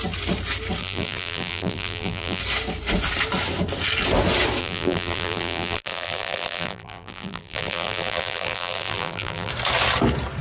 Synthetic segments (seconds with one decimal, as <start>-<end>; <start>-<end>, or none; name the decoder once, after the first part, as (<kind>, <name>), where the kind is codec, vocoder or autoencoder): 0.8-2.4 (vocoder, BigVGAN v2); 4.6-9.5